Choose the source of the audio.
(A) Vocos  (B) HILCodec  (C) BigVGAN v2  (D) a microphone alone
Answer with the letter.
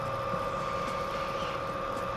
D